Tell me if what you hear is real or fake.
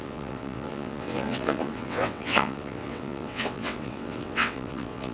fake